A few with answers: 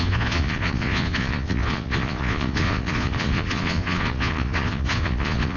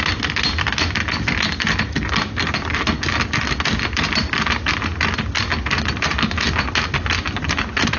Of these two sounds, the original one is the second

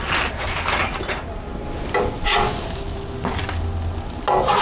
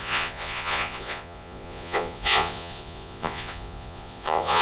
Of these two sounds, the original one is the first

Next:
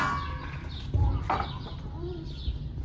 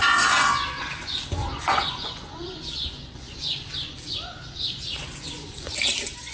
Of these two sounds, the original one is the first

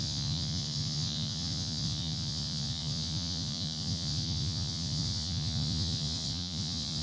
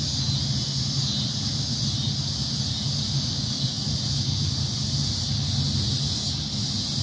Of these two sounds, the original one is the second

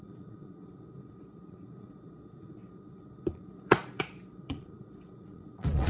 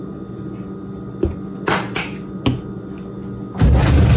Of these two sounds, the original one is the second